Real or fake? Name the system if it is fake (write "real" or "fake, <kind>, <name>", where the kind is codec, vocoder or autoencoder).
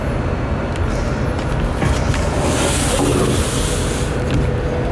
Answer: real